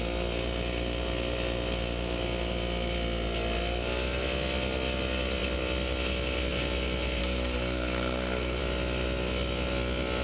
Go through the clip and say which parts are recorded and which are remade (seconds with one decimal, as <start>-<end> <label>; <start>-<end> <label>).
0.0-7.2 recorded; 7.2-8.6 remade; 8.6-10.2 recorded